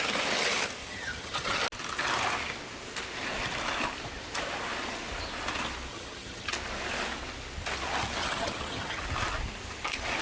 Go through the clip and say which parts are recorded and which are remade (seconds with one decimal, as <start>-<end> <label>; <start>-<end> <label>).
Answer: 0.0-0.8 recorded; 0.8-1.6 remade; 1.6-5.9 recorded; 5.9-6.5 remade; 6.5-8.2 recorded; 8.2-9.0 remade; 9.0-10.2 recorded